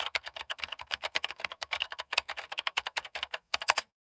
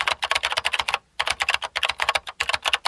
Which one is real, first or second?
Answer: second